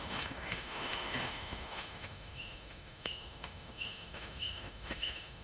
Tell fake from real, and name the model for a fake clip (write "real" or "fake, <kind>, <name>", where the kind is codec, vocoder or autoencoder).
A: fake, autoencoder, DAC-VAE